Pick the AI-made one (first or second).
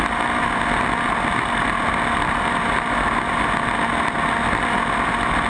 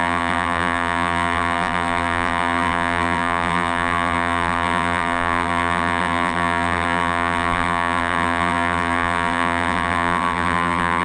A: second